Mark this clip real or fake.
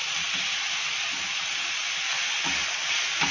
real